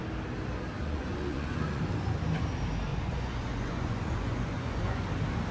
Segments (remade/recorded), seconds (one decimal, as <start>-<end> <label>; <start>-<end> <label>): 0.0-0.8 recorded; 0.8-1.8 remade; 1.8-2.9 recorded; 2.9-5.0 remade; 5.0-5.5 recorded